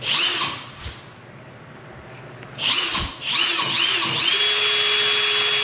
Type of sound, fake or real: real